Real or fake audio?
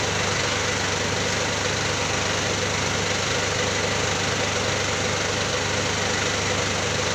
real